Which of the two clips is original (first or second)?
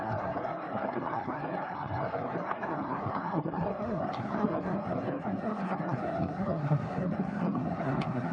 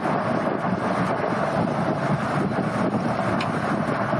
second